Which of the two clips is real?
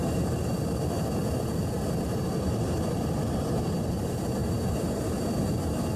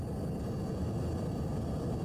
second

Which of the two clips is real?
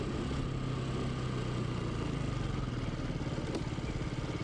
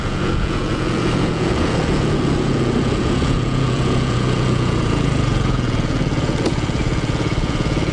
first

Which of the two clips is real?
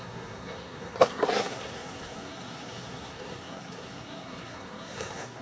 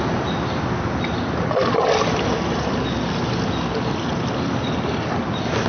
second